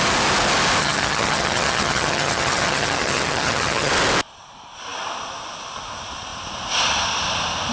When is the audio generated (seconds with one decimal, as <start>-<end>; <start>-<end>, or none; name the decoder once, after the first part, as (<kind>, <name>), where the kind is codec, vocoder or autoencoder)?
0.8-3.9 (vocoder, HiFi-GAN)